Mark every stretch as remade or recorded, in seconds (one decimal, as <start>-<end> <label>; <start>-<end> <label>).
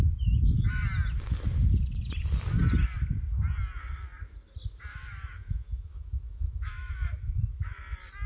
0.0-4.9 recorded; 4.9-7.8 remade; 7.8-8.3 recorded